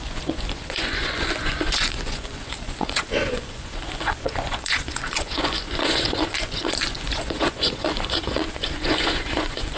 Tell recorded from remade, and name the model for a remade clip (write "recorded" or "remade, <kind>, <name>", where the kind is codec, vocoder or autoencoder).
remade, vocoder, Vocos